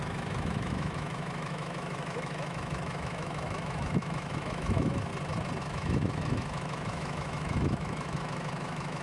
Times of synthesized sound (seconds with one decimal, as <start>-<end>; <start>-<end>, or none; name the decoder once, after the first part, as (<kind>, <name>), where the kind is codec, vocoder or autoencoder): 0.0-5.1 (autoencoder, DAC-VAE); 5.6-9.0